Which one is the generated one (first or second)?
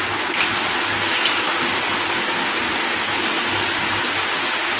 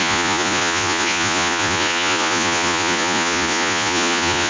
second